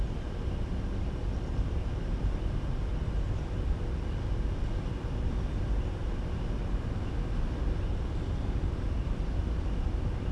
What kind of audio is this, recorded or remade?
recorded